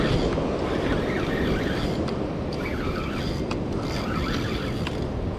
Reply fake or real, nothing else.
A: real